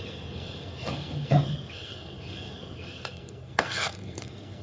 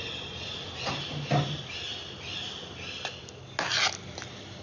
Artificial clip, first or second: first